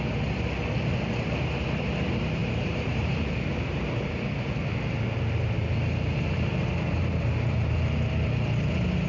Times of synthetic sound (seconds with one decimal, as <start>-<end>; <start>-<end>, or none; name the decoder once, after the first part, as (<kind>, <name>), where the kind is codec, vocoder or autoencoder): 2.4-4.1 (vocoder, BigVGAN v2)